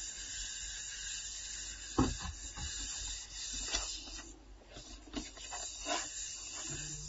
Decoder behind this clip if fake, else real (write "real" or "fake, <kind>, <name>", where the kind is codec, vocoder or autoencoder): real